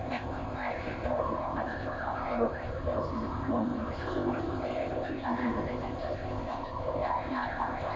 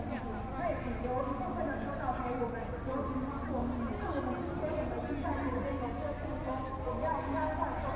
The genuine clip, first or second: second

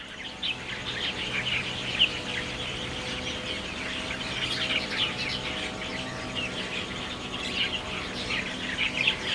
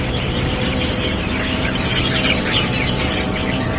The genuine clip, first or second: first